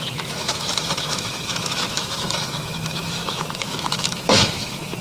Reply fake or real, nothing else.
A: fake